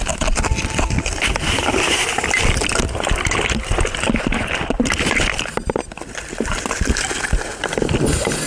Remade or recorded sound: recorded